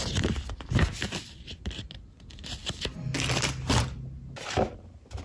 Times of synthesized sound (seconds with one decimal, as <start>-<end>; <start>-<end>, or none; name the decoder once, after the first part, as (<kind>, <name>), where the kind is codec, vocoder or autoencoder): 0.0-0.8 (vocoder, BigVGAN v2)